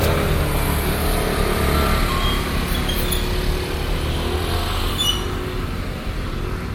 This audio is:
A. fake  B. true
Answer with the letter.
B